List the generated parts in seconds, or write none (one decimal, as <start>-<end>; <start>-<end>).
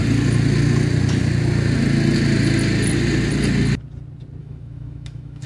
4.4-5.5